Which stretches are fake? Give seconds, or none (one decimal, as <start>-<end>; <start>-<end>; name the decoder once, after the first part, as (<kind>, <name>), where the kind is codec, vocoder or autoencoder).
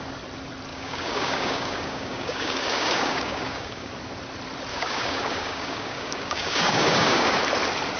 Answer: 0.7-3.9 (codec, DAC); 4.7-7.4